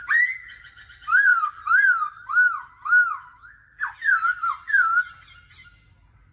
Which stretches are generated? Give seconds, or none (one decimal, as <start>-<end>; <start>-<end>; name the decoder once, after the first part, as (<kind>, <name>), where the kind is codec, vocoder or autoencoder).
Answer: none